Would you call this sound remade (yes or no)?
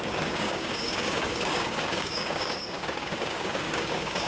yes